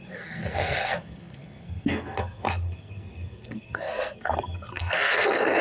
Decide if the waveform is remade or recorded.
remade